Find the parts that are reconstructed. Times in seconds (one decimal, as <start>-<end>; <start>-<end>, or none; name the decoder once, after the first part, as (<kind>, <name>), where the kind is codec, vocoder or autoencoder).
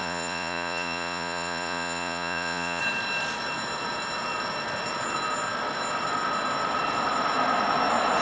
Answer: 0.0-2.8 (vocoder, Vocos)